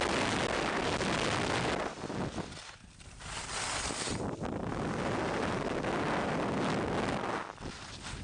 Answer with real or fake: real